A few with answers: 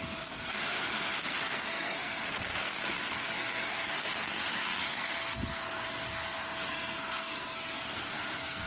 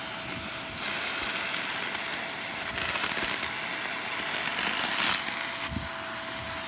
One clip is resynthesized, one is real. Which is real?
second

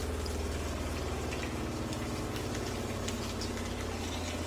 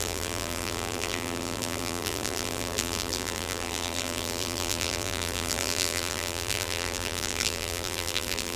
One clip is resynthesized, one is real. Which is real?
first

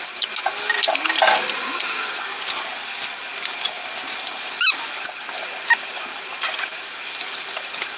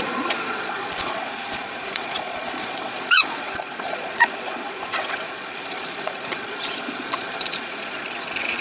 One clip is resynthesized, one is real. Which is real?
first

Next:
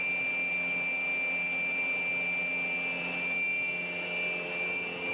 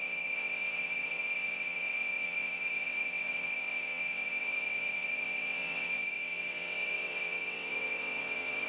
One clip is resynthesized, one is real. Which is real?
first